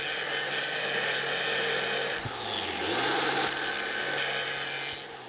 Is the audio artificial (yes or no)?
no